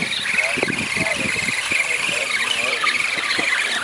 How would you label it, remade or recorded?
recorded